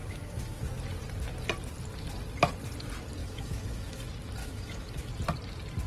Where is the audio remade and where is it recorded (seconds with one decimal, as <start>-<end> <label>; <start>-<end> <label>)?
0.0-0.6 remade; 0.6-3.2 recorded; 3.2-4.0 remade; 4.0-4.4 recorded; 4.4-5.1 remade; 5.1-5.9 recorded